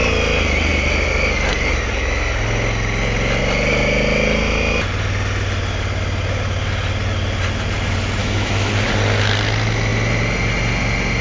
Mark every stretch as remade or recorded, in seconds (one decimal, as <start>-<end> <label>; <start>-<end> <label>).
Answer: 0.0-8.2 recorded; 8.2-8.7 remade; 8.7-11.2 recorded